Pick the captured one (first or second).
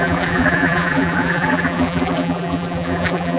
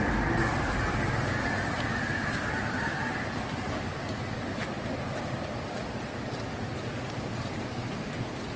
second